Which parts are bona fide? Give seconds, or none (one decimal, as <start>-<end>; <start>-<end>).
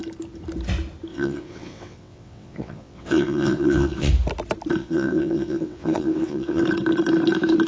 0.0-1.1; 4.1-4.8; 6.6-7.7